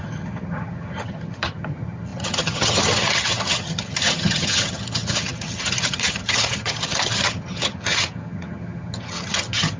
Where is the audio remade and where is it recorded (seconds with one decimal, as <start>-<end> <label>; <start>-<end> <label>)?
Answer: 0.0-9.8 remade